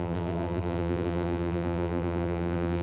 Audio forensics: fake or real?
fake